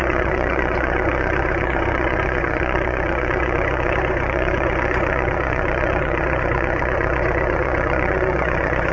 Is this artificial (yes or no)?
yes